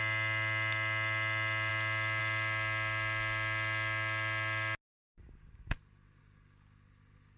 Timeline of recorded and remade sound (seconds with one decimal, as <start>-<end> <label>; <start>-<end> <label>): 0.0-7.4 recorded